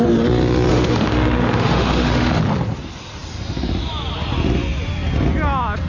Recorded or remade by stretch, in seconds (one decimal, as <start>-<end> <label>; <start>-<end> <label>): 0.0-0.7 recorded; 0.7-2.4 remade; 2.4-5.9 recorded

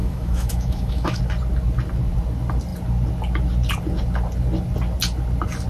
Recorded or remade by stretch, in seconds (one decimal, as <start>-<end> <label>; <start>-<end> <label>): 0.0-1.2 remade; 1.2-5.7 recorded